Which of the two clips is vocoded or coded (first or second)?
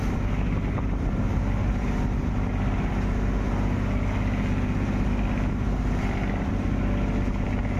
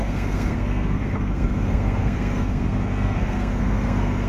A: second